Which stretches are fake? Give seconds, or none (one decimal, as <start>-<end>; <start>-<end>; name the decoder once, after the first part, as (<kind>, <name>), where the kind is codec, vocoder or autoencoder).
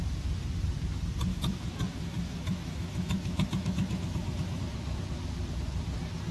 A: 1.3-4.6 (autoencoder, DAC-VAE)